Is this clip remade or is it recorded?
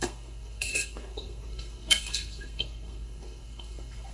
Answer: remade